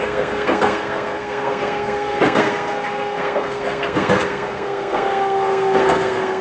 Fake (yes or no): yes